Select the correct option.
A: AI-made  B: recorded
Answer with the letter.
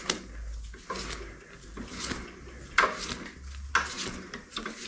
B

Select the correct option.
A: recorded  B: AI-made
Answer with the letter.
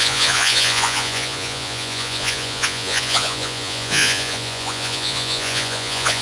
B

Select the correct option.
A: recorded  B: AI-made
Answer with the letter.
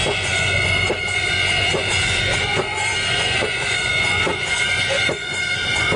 B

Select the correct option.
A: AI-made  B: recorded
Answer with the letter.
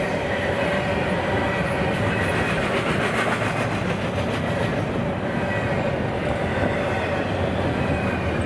B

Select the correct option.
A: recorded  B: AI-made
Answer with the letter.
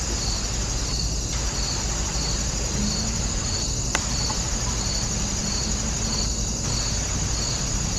A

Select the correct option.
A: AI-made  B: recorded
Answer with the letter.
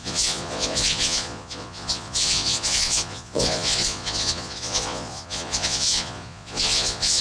A